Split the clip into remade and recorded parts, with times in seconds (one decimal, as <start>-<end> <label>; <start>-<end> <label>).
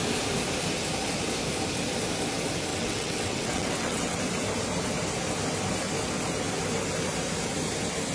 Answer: 0.0-2.7 recorded; 2.7-4.2 remade; 4.2-8.1 recorded